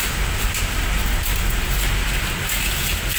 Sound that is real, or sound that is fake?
real